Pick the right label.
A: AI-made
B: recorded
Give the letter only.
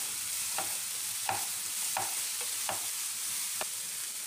B